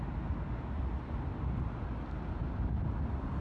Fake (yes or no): no